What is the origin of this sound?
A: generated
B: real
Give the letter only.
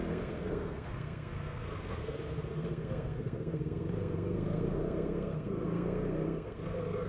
A